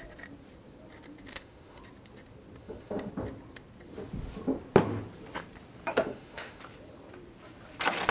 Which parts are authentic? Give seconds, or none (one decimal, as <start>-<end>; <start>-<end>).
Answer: 0.0-1.3; 1.8-2.6; 3.1-5.9; 6.6-8.1